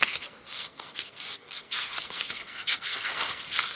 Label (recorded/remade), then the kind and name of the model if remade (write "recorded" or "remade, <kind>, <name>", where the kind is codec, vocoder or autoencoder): remade, codec, SNAC